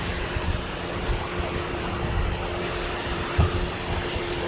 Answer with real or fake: real